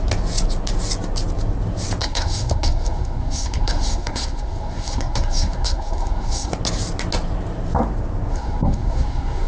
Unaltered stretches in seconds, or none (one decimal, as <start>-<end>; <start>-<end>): 0.0-2.0; 6.5-8.3